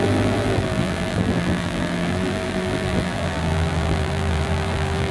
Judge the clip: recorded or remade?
remade